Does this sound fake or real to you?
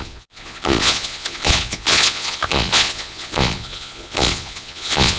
fake